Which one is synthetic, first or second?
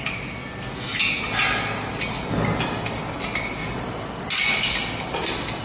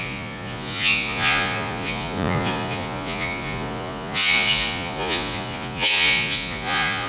second